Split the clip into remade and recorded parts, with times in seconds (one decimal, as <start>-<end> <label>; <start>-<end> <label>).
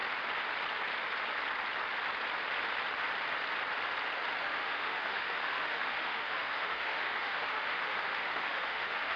0.0-4.4 recorded; 4.4-9.2 remade